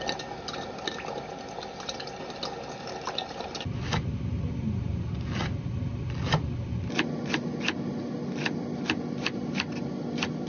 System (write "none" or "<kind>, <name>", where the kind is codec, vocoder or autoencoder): none